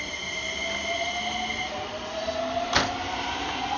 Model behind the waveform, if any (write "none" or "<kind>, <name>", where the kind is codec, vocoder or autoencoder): none